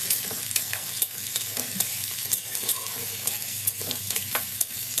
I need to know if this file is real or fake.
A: fake